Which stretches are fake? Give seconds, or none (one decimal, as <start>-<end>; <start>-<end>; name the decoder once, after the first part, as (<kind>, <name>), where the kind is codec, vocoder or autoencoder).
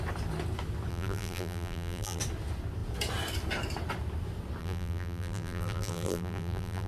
0.9-2.2 (vocoder, BigVGAN v2); 4.6-6.9